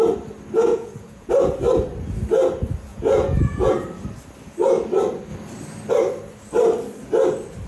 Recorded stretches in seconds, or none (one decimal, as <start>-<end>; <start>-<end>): 0.0-0.7; 1.3-2.9; 3.7-7.7